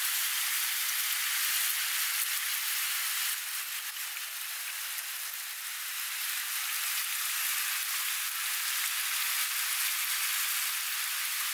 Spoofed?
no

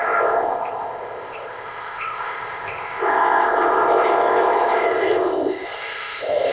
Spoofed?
yes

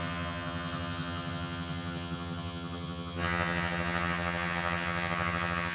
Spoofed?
yes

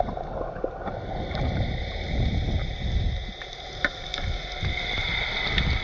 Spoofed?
no